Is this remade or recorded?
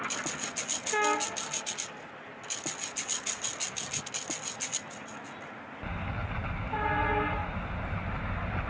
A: recorded